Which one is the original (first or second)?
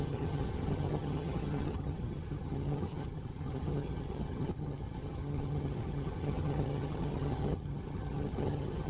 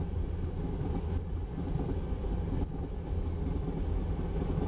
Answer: second